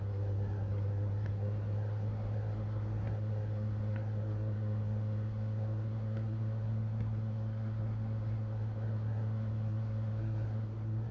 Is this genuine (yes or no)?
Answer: no